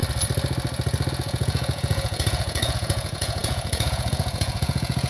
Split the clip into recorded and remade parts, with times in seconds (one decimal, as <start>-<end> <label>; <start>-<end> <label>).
0.0-1.1 recorded; 1.1-5.1 remade